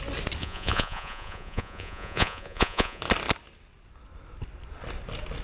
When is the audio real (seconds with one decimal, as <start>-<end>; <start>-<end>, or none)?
0.0-0.4; 3.0-5.4